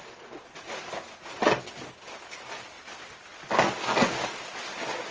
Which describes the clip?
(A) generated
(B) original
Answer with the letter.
B